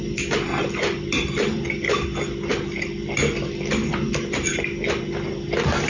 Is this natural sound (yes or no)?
yes